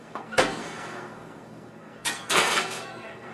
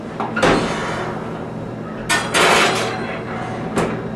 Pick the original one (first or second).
second